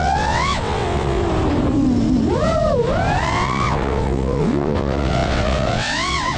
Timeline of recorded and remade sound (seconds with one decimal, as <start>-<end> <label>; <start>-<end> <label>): 0.0-1.2 remade; 1.2-3.2 recorded; 3.2-6.4 remade